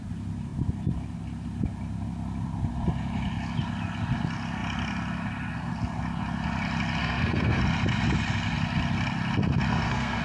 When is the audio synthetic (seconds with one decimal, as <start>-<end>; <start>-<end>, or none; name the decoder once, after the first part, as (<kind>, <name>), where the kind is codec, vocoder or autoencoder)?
7.0-7.6 (codec, SNAC); 9.7-10.2